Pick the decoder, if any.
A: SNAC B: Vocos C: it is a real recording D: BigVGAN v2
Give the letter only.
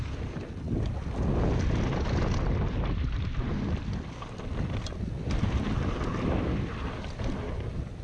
C